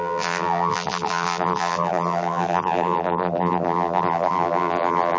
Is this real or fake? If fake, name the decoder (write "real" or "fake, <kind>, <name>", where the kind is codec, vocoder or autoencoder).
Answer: fake, vocoder, BigVGAN v2